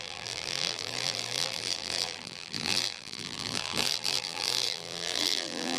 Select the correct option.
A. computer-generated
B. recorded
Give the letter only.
A